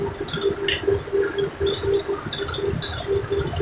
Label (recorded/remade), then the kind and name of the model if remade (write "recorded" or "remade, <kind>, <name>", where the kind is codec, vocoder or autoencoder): recorded